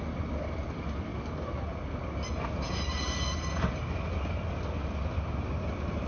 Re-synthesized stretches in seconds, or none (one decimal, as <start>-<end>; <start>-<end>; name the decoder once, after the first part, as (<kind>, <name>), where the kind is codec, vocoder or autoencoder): none